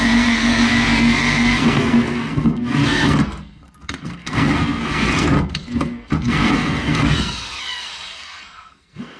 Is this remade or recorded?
remade